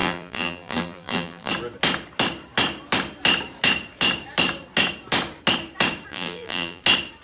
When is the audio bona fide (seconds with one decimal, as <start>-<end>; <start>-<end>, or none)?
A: 1.5-6.1; 6.8-7.2